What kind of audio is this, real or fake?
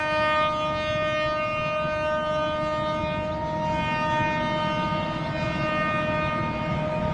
real